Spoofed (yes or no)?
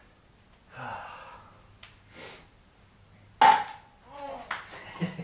no